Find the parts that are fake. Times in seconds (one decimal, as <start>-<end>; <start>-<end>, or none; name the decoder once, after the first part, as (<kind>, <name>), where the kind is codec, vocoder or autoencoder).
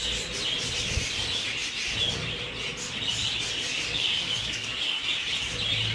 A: 3.7-5.0 (codec, DAC)